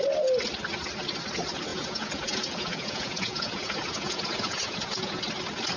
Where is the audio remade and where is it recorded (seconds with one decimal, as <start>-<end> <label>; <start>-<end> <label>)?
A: 0.0-1.7 recorded; 1.7-5.2 remade; 5.2-5.8 recorded